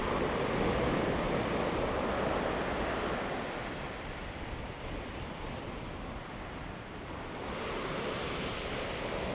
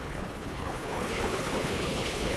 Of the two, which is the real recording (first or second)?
first